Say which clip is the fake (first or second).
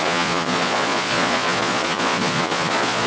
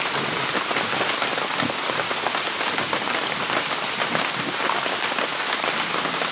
first